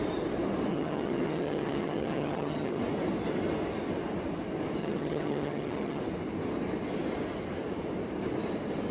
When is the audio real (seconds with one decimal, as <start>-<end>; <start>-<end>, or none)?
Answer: 0.0-0.7; 2.8-4.8; 6.0-8.9